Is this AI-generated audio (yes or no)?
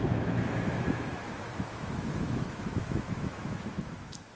yes